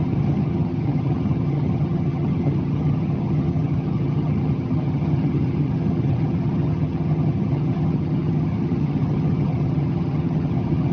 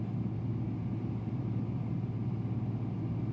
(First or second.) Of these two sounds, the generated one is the first